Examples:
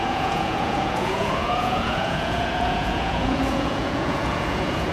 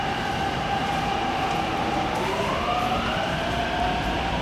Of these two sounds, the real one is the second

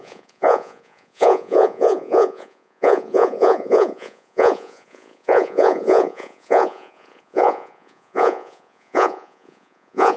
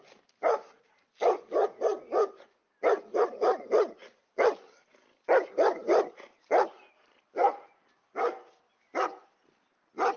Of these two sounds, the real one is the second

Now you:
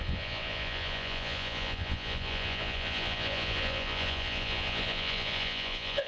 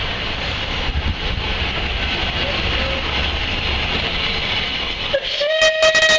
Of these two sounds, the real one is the second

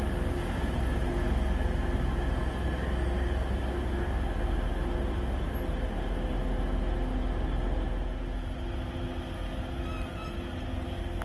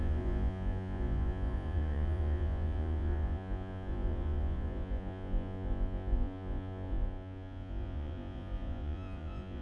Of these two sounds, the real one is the first